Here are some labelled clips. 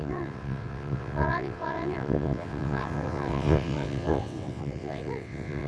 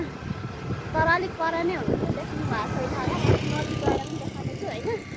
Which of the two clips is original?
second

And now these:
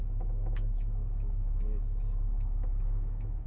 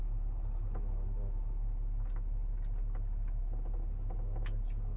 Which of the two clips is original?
second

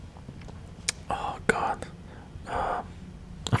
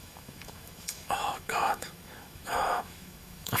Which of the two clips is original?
first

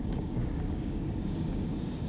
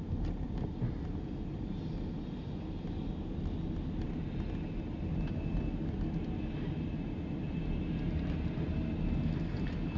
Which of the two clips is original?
second